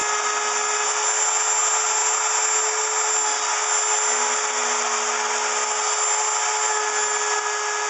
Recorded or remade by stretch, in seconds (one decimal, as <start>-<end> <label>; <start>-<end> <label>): 0.0-7.9 recorded